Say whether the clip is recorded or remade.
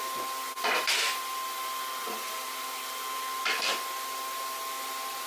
recorded